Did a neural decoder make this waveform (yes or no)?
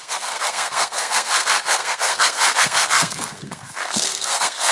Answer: yes